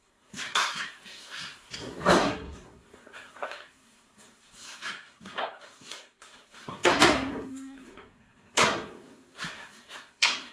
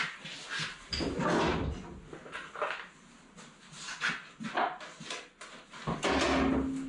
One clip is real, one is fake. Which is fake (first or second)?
first